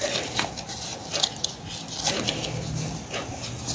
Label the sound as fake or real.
real